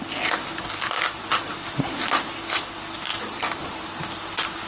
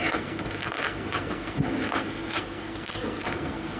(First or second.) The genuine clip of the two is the first